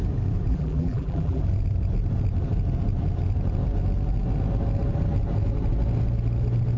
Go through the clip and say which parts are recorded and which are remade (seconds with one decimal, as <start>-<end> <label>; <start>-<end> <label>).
0.0-0.5 recorded; 0.5-1.4 remade; 1.4-6.8 recorded